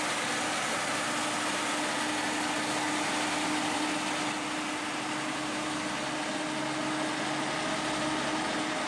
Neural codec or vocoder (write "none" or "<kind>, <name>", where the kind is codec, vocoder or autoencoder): none